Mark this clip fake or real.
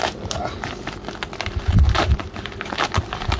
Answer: real